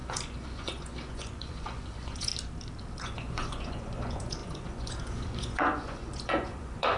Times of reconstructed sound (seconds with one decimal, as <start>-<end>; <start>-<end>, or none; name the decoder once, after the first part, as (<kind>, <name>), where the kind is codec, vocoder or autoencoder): 0.0-2.3 (vocoder, Vocos); 3.0-7.0